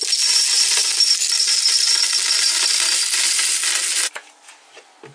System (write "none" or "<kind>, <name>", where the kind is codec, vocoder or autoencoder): none